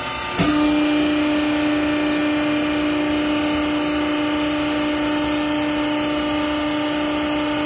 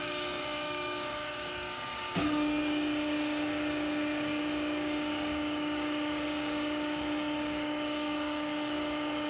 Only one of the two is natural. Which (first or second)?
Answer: first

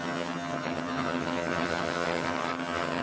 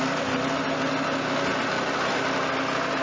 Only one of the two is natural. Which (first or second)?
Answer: second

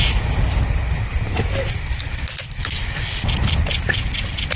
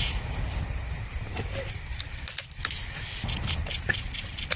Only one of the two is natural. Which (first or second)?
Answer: first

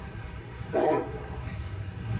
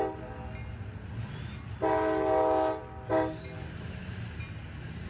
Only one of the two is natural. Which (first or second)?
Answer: second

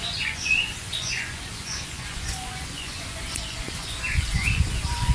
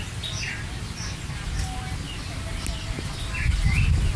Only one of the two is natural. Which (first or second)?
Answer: second